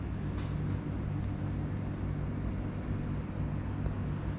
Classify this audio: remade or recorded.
recorded